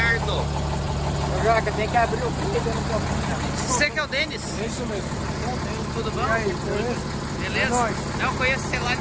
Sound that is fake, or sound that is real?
real